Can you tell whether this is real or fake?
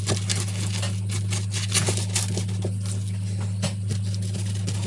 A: real